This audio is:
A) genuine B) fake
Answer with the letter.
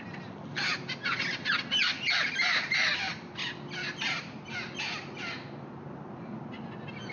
A